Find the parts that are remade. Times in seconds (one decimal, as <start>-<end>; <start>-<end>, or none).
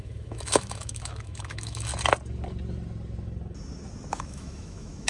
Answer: 0.0-1.9; 4.1-5.1